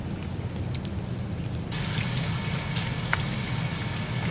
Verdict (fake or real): real